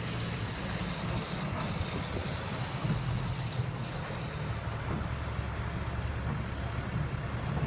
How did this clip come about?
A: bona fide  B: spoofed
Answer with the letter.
A